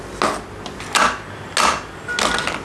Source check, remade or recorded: recorded